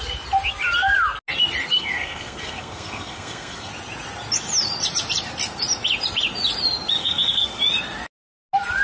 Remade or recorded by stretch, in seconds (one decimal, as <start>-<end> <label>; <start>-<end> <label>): 0.0-1.7 recorded; 1.7-3.7 remade; 3.7-7.0 recorded; 7.0-7.6 remade; 7.6-8.8 recorded

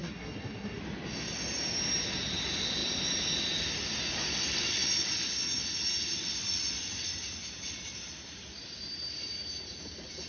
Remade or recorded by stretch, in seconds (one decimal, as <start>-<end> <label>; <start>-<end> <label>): 0.0-0.8 remade; 0.8-10.3 recorded